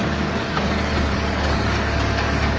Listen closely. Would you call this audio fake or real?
fake